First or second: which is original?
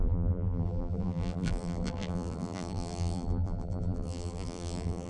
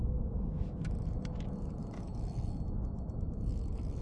second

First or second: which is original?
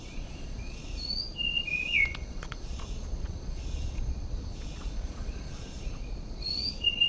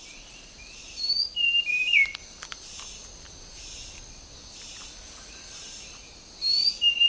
second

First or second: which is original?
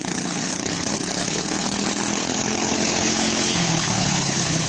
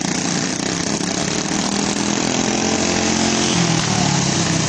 second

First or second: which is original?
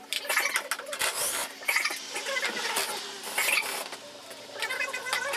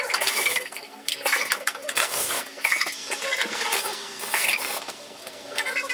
first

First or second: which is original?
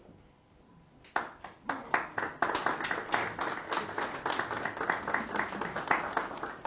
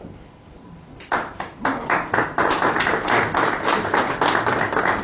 first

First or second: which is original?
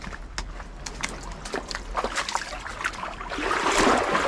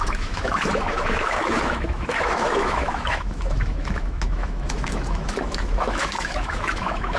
first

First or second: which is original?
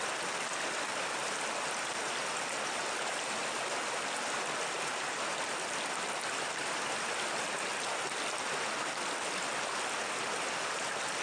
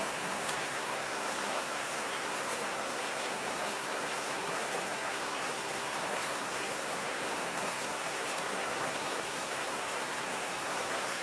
first